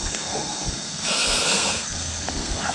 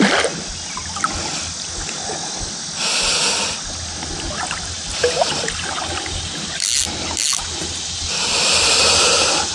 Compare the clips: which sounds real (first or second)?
second